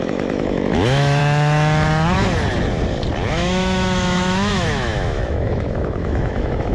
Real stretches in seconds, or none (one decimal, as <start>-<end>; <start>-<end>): 1.2-3.3